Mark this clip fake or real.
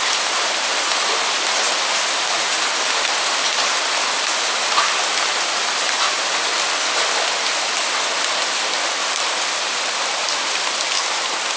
fake